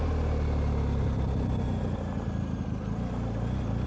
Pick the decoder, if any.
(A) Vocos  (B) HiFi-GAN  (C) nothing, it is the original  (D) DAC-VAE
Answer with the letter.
C